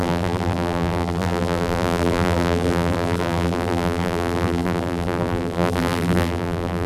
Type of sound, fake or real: fake